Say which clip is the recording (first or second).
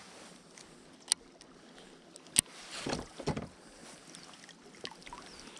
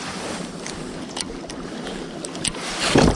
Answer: first